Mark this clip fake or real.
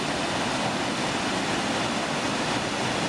real